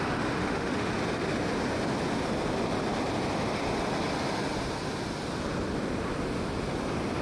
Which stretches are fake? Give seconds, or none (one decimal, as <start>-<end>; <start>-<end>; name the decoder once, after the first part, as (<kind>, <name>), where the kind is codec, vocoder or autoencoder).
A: 0.4-0.9 (autoencoder, DAC-VAE)